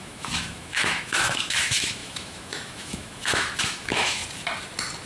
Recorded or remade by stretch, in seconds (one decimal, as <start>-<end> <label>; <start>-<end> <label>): 0.0-4.2 remade; 4.2-5.1 recorded